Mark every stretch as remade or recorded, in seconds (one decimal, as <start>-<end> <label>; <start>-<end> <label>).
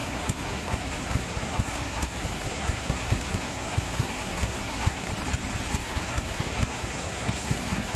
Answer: 0.0-5.1 remade; 5.1-5.7 recorded; 5.7-8.0 remade